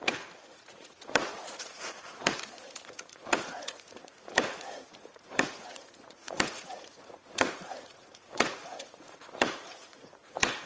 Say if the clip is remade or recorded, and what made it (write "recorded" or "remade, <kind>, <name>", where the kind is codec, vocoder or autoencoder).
remade, vocoder, Vocos